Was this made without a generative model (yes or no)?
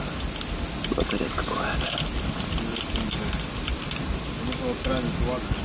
yes